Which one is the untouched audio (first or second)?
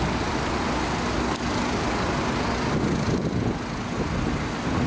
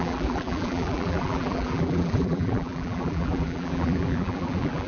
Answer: first